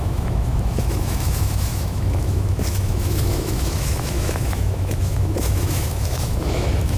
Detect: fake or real fake